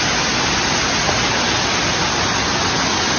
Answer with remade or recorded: recorded